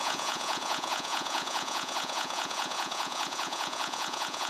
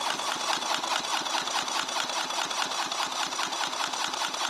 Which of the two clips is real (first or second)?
second